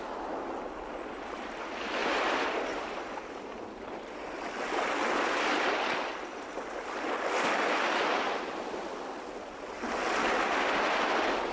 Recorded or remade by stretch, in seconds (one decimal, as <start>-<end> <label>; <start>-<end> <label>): 0.0-2.0 recorded; 2.0-3.6 remade; 3.6-11.5 recorded